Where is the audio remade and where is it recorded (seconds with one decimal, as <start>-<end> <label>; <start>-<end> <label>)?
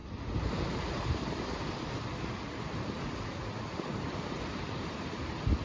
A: 0.0-5.6 recorded